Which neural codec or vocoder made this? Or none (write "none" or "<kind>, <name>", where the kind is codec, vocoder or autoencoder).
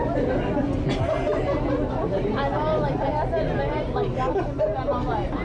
none